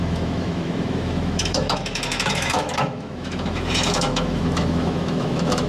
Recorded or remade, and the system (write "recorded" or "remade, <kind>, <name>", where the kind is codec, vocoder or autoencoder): remade, autoencoder, DAC-VAE